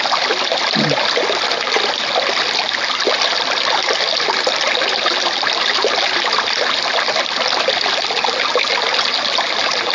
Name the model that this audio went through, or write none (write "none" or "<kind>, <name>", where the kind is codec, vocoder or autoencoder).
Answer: none